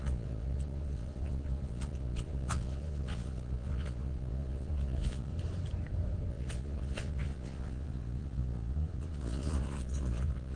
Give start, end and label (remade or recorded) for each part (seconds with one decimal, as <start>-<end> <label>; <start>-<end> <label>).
0.0-5.3 remade; 5.3-6.3 recorded; 6.3-10.6 remade